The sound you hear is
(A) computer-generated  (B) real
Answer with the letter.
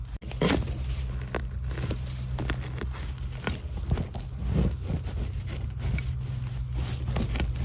B